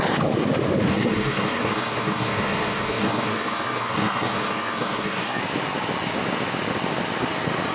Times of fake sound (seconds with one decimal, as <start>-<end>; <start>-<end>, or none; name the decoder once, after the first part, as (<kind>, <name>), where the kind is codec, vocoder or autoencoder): 0.9-5.4 (codec, SNAC)